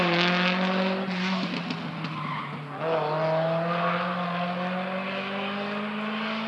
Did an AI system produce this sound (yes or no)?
no